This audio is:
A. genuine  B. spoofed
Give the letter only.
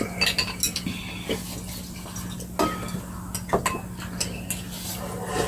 A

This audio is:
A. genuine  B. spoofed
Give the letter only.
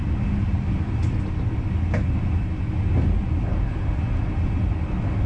A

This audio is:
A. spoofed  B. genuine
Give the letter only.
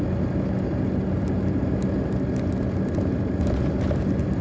B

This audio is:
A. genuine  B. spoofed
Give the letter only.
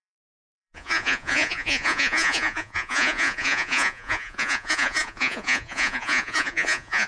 B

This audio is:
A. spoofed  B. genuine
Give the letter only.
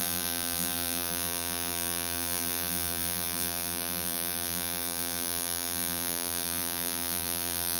A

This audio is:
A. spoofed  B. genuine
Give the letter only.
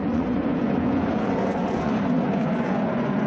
A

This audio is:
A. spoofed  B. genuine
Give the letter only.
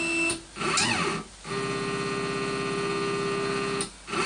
B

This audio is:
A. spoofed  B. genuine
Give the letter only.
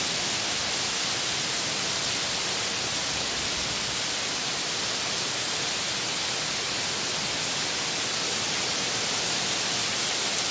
B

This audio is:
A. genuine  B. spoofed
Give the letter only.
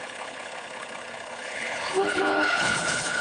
B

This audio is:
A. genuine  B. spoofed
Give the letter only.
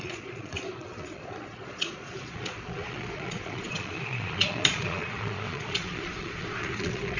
B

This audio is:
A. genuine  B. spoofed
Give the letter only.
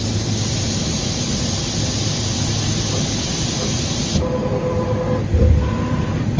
A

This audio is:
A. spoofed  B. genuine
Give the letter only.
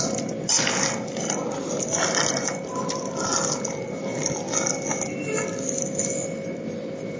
B